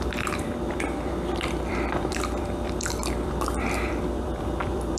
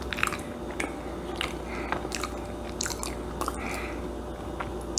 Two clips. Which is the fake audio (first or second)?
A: first